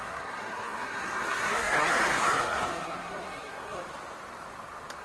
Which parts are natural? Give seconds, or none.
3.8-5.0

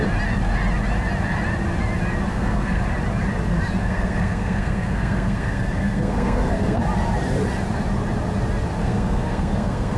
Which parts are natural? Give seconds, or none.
0.0-2.3; 2.8-3.8; 6.8-8.8

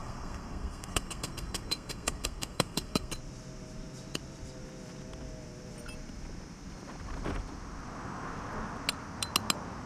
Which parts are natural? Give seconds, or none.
3.1-9.9

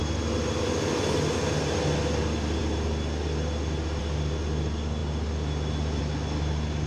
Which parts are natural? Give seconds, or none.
0.0-6.9

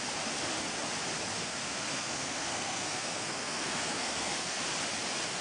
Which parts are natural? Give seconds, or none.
0.0-1.4; 4.6-5.4

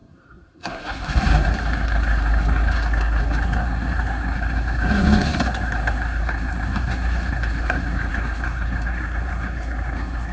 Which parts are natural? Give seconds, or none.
none

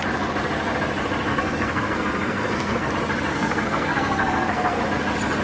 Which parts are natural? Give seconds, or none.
0.0-1.3; 2.9-3.3; 4.8-5.4

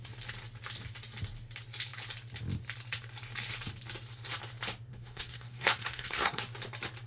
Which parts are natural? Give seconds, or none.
0.0-4.9; 6.4-7.1